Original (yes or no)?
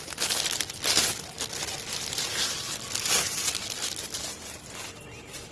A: yes